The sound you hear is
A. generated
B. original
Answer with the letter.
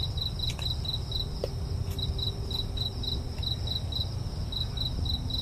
B